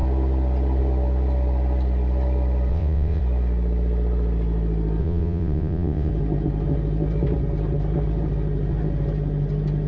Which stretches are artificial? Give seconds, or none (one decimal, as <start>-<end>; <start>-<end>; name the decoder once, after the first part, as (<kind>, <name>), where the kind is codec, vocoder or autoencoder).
2.7-3.2 (vocoder, WaveNeXt); 5.0-6.1